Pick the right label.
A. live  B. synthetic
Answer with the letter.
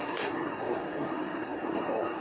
B